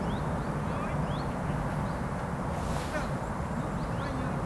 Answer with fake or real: real